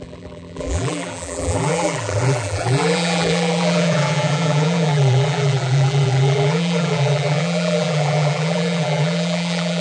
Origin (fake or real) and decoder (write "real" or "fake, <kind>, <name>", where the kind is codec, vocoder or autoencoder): fake, vocoder, BigVGAN v2